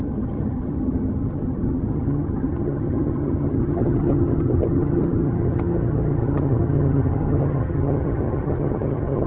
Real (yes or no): no